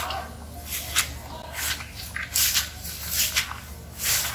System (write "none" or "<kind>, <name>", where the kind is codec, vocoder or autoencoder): none